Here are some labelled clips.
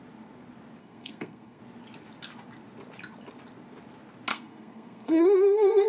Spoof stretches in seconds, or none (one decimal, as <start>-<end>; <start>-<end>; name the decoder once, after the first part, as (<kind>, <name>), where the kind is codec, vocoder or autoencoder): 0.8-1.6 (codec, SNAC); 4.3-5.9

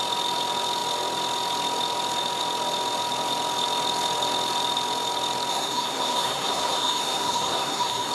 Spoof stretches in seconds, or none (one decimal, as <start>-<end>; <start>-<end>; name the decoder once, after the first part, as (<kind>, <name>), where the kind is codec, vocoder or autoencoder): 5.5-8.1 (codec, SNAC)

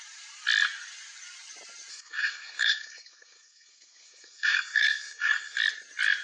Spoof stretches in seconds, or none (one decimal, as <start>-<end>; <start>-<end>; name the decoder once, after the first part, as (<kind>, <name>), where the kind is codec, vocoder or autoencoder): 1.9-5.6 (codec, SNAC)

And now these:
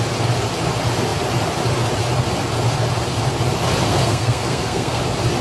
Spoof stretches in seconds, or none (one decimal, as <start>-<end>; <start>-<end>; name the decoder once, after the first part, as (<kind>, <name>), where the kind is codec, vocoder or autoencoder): 3.9-5.0 (codec, SNAC)

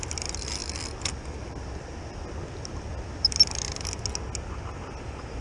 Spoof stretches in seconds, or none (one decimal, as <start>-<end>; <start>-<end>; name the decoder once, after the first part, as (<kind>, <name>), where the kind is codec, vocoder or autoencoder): none

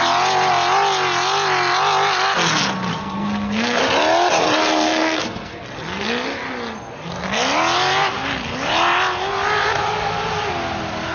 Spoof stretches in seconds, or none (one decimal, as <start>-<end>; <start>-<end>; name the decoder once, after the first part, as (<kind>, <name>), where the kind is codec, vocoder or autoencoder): 2.9-3.8 (codec, SNAC); 4.6-5.6